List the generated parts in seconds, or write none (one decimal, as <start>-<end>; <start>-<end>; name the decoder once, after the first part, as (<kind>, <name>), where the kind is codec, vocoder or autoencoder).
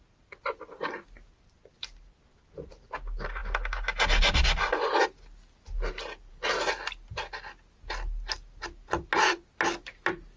none